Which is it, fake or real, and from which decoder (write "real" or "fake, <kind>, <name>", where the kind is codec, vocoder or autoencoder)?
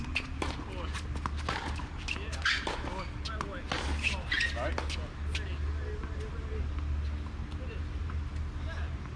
real